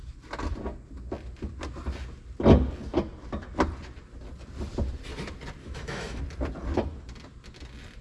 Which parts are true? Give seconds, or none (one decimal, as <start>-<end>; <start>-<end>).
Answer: 0.0-5.6; 6.2-8.0